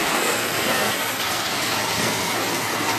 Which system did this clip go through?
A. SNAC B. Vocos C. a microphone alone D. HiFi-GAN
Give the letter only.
A